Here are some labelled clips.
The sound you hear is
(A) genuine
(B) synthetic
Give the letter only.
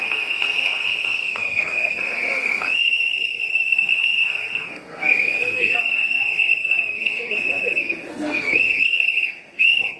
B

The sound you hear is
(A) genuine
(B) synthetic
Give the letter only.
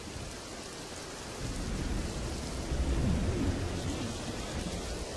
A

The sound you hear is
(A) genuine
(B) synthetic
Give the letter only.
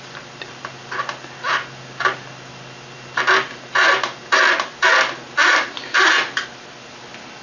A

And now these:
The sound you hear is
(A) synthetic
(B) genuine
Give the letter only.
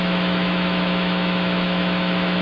A